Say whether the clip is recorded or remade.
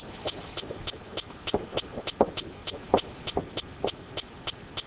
recorded